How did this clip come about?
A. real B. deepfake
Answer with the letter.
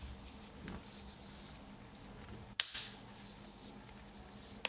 A